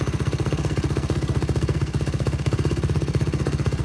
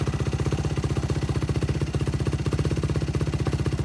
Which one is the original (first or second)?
second